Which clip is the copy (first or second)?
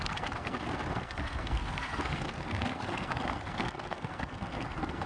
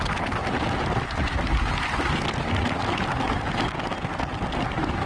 first